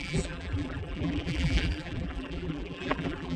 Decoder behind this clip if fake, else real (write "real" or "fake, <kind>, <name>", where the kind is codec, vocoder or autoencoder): fake, vocoder, BigVGAN v2